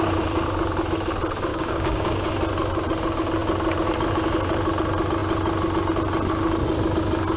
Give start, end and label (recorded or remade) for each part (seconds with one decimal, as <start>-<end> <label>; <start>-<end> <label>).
0.0-1.5 recorded; 1.5-2.3 remade; 2.3-7.4 recorded

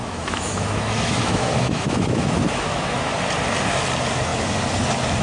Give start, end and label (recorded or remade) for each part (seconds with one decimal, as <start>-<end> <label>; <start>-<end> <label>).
0.0-3.1 remade; 3.1-5.2 recorded

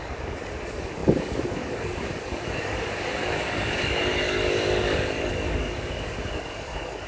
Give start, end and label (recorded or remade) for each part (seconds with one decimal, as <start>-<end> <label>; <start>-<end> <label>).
0.0-7.1 remade

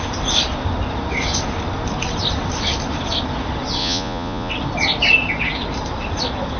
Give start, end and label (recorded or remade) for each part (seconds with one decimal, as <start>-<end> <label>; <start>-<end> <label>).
0.0-3.8 recorded; 3.8-4.5 remade; 4.5-6.6 recorded

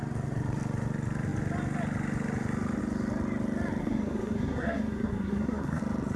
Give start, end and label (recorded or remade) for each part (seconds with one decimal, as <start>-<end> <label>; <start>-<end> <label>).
0.0-3.8 recorded; 3.8-5.8 remade; 5.8-6.2 recorded

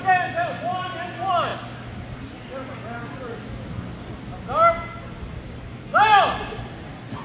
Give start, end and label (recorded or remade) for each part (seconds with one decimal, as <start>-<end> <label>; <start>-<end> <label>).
0.0-7.2 recorded

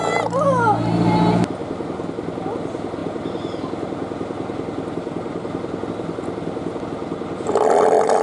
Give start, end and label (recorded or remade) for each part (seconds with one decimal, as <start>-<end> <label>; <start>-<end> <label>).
0.0-8.2 recorded